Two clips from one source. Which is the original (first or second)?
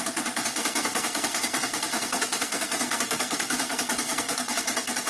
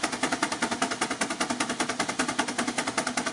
second